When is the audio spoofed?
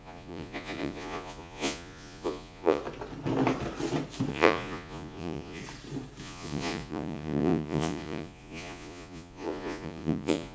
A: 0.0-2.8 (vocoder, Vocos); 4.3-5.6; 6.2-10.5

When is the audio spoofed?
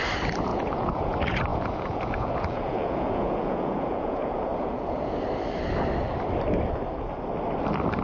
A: 0.5-1.1 (vocoder, Vocos); 1.5-5.1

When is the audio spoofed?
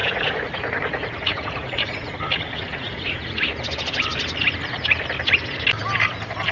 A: 0.0-2.1 (vocoder, Vocos); 2.7-3.4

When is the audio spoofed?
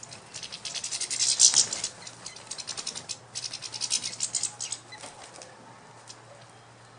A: none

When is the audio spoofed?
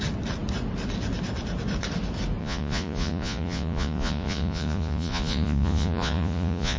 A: 2.4-6.8 (vocoder, Vocos)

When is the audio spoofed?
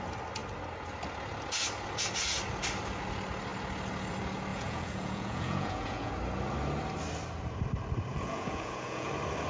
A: 4.5-6.1 (vocoder, Vocos); 8.1-9.1